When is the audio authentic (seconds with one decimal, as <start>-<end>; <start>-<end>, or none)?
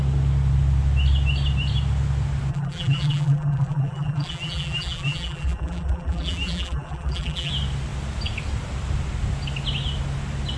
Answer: 0.0-2.5; 7.5-10.6